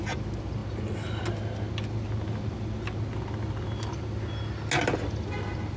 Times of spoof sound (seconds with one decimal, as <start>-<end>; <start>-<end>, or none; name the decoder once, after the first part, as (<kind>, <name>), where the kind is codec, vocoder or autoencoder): none